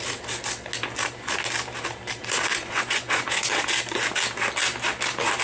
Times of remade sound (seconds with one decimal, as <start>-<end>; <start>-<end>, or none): 2.5-3.5